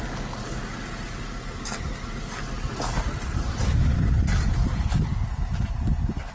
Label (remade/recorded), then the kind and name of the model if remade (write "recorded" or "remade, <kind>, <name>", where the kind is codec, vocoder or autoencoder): recorded